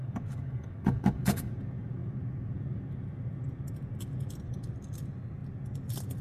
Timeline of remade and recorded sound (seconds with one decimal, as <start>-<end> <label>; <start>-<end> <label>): 0.0-1.5 remade; 1.5-6.2 recorded